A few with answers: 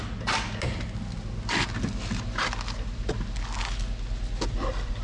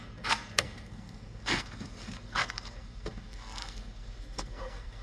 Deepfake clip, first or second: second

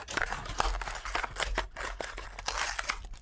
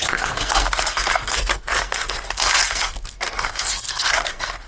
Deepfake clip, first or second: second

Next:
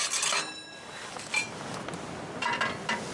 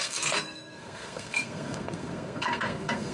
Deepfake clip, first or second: second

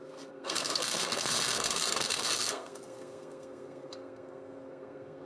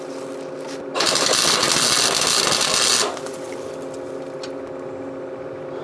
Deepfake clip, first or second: first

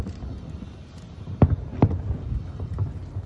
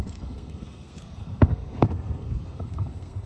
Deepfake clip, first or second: second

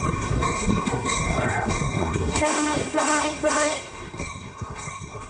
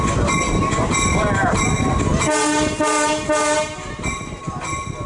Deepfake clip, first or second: first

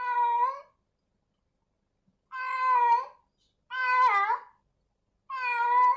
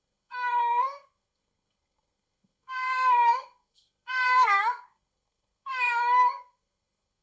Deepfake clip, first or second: second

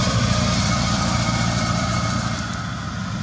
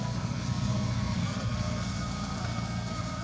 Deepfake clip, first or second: second